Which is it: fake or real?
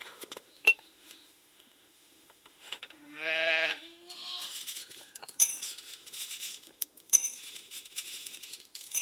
fake